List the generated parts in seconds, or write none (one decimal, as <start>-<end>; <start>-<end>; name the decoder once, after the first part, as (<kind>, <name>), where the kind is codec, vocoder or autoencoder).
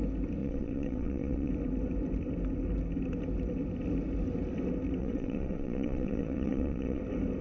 0.4-1.5 (vocoder, WaveNeXt); 5.0-7.0